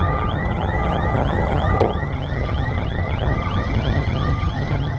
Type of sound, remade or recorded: remade